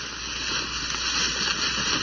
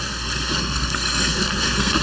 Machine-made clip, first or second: second